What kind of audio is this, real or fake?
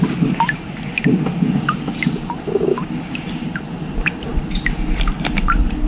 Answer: real